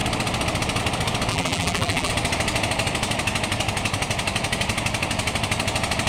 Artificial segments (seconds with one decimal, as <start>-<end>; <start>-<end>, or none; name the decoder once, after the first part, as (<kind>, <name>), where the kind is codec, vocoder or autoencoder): 1.3-2.1 (vocoder, BigVGAN v2)